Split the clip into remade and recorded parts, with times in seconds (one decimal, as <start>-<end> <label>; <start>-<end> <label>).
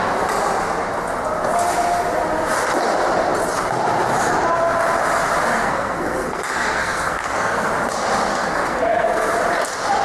0.0-5.5 recorded; 5.5-7.7 remade; 7.7-8.3 recorded; 8.3-9.4 remade; 9.4-10.0 recorded